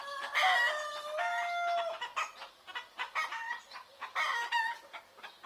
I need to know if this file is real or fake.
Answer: real